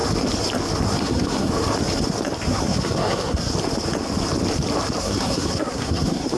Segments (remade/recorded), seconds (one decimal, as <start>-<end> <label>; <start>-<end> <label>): 0.0-1.0 recorded; 1.0-1.5 remade; 1.5-2.5 recorded; 2.5-3.5 remade; 3.5-5.0 recorded; 5.0-6.4 remade

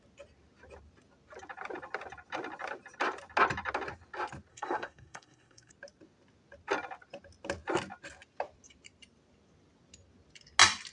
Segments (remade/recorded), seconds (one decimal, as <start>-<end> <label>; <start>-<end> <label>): 0.0-4.5 recorded; 4.5-5.7 remade; 5.7-10.9 recorded

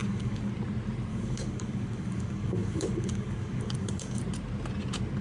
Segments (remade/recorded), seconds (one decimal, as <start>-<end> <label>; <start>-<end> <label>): 0.0-0.5 remade; 0.5-1.1 recorded; 1.1-4.2 remade; 4.2-5.2 recorded

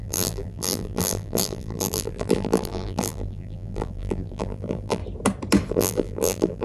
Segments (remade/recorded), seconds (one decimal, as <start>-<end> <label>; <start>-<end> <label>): 0.0-5.0 remade; 5.0-5.7 recorded; 5.7-6.6 remade

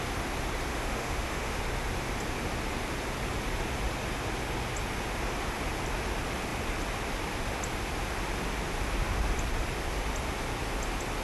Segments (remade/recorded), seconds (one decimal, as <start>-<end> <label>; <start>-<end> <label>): 0.0-0.7 recorded; 0.7-1.6 remade; 1.6-11.2 recorded

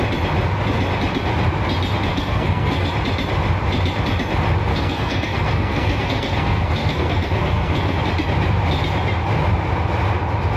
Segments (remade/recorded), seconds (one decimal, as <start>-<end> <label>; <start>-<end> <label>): 0.0-2.1 recorded; 2.1-2.9 remade; 2.9-4.7 recorded; 4.7-8.0 remade; 8.0-10.6 recorded